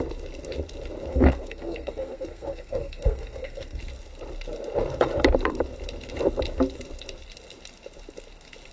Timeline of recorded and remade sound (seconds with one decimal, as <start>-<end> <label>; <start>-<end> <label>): 0.0-1.1 recorded; 1.1-3.8 remade; 3.8-8.7 recorded